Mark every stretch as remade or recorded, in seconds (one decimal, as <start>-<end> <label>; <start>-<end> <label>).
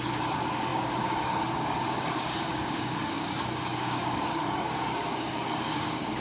0.0-6.2 remade